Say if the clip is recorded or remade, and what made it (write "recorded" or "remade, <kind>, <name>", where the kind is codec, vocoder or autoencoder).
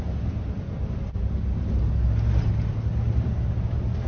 recorded